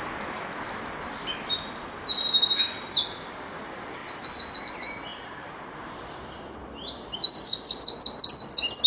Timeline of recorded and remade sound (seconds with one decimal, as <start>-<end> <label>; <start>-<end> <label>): 0.0-5.1 recorded; 5.1-5.8 remade; 5.8-8.9 recorded